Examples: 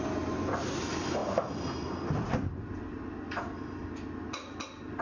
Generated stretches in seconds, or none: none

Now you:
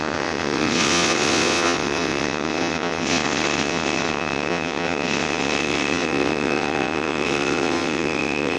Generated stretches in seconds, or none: 0.0-8.6 (vocoder, WaveNeXt)

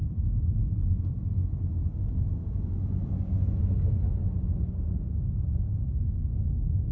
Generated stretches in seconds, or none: none

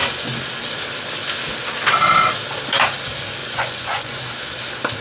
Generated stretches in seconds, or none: 3.4-4.2 (vocoder, Vocos)

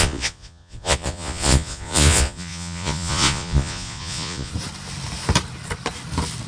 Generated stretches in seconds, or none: 0.0-4.5 (vocoder, Vocos)

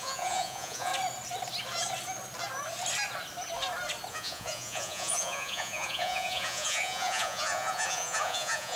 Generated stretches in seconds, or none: 0.0-0.9 (vocoder, Vocos); 4.1-8.8

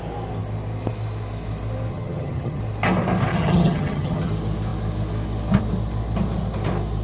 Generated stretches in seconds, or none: 1.9-2.6 (vocoder, HiFi-GAN); 3.3-4.3

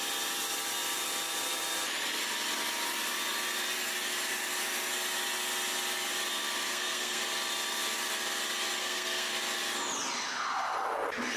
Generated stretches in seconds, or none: 6.7-7.2 (codec, SNAC); 8.8-9.3